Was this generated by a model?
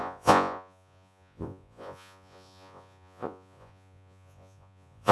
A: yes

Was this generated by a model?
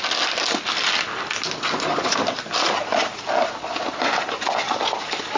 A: no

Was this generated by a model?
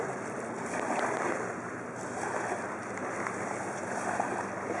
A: no